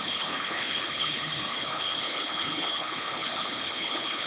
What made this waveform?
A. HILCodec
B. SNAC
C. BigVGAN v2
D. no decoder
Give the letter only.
A